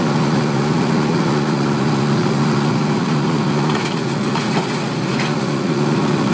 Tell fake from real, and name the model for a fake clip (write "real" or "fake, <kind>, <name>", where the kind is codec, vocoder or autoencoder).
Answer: fake, vocoder, Vocos